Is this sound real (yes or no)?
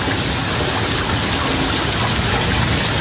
yes